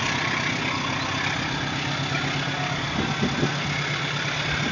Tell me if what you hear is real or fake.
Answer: real